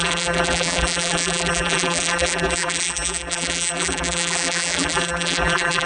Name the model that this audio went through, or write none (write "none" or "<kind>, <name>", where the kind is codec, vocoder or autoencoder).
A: vocoder, BigVGAN v2